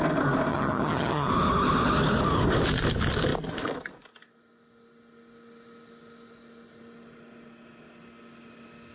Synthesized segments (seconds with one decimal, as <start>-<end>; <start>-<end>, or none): 0.5-1.3